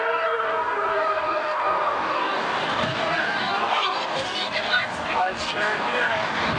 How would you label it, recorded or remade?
remade